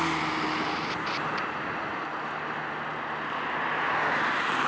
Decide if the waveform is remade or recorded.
recorded